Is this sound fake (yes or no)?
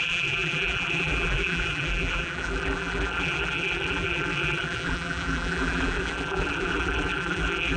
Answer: yes